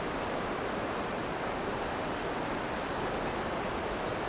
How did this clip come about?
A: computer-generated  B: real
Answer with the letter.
B